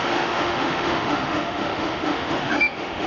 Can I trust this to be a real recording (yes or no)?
no